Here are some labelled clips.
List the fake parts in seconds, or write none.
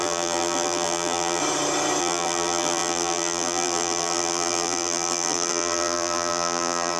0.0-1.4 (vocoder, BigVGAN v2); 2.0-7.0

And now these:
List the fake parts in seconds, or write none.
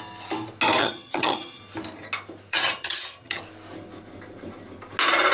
0.8-1.6 (vocoder, HiFi-GAN); 2.5-3.4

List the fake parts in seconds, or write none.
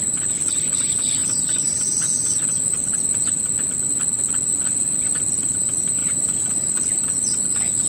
1.2-1.8 (vocoder, BigVGAN v2); 6.0-6.7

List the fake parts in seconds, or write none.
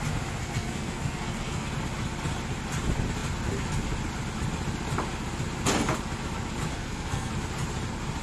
0.4-1.7 (codec, SNAC); 6.7-7.3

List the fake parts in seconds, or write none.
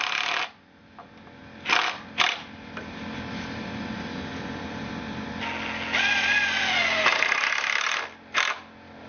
7.1-8.0 (vocoder, BigVGAN v2)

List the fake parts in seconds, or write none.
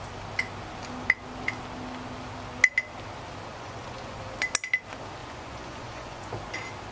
3.5-4.2 (vocoder, Vocos); 5.2-6.3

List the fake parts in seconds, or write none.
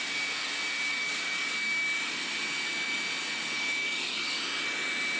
0.9-1.5 (codec, DAC); 3.8-4.4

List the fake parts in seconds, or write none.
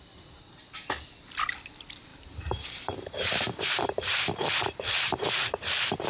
2.1-6.1 (vocoder, BigVGAN v2)